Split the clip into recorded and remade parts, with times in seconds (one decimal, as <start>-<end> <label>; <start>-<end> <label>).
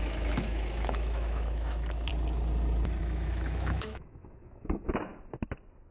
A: 0.0-2.1 remade; 2.1-3.0 recorded; 3.0-5.1 remade; 5.1-5.9 recorded